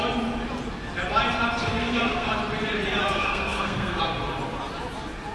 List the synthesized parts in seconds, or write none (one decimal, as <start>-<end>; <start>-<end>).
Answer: 1.6-2.3; 3.0-4.0